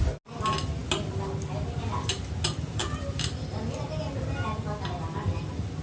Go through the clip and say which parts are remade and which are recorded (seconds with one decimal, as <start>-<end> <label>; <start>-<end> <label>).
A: 0.0-5.8 recorded